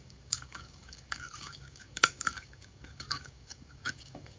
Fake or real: fake